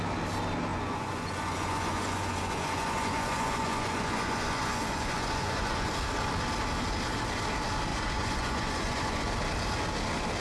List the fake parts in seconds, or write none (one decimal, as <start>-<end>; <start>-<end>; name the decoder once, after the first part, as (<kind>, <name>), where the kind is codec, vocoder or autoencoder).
0.7-5.9 (vocoder, Vocos); 7.9-9.3